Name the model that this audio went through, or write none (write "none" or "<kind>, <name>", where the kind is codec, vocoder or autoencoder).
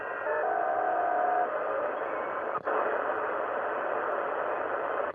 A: vocoder, BigVGAN v2